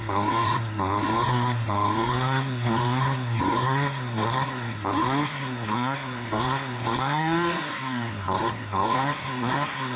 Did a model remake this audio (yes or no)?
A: yes